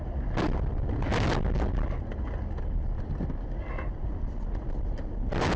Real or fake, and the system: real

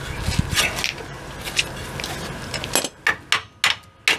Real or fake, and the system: real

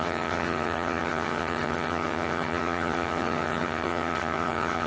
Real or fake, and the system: fake, vocoder, HiFi-GAN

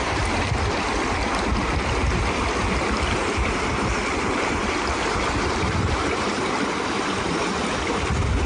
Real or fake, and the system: fake, vocoder, BigVGAN v2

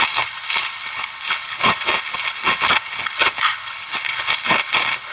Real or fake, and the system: fake, codec, HILCodec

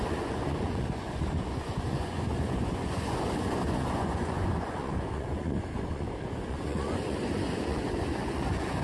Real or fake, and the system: fake, vocoder, Vocos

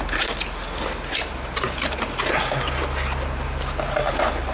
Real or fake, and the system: real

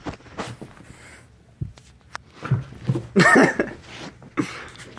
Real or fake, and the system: real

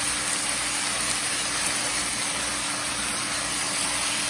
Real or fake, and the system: real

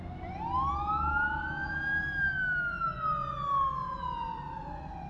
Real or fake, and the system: real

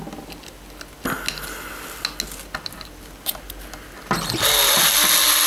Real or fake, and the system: real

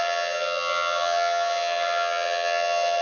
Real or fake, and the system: fake, vocoder, HiFi-GAN